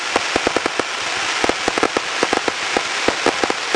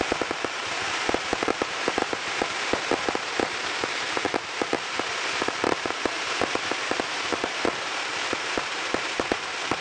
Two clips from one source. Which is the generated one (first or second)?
second